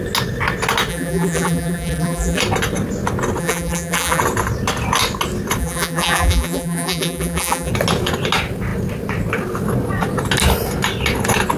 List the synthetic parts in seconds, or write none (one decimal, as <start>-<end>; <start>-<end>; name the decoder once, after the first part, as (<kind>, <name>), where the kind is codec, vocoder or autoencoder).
0.9-2.4 (vocoder, BigVGAN v2); 3.4-4.2; 5.6-7.7